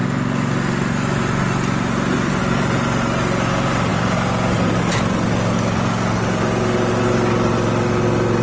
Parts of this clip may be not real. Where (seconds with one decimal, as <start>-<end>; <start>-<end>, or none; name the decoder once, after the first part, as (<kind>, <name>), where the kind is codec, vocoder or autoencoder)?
none